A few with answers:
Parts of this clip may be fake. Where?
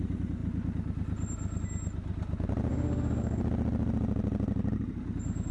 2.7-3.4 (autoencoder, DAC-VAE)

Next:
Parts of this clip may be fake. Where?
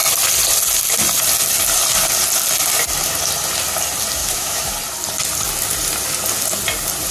4.2-4.7 (autoencoder, DAC-VAE)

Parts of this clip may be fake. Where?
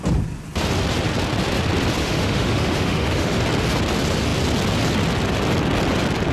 2.0-3.4 (autoencoder, DAC-VAE)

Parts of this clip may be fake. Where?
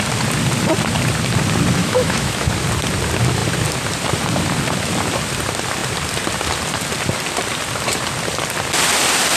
1.8-2.5 (autoencoder, DAC-VAE)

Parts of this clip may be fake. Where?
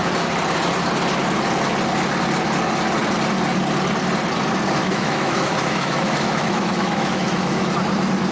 4.8-7.7 (autoencoder, DAC-VAE)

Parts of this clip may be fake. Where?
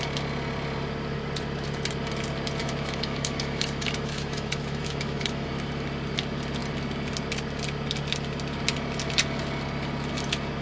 2.6-5.5 (autoencoder, DAC-VAE)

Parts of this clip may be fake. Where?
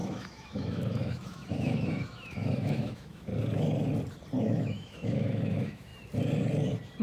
0.0-3.3 (autoencoder, DAC-VAE); 4.4-5.9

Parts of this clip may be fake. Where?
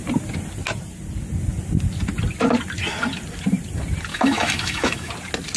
4.1-5.1 (autoencoder, DAC-VAE)